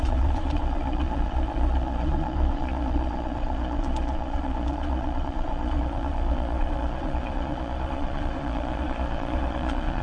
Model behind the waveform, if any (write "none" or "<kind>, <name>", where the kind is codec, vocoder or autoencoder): vocoder, Vocos